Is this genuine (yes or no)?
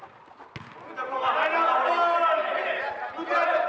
yes